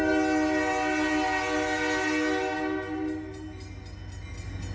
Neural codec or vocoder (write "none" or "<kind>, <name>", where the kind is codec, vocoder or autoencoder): none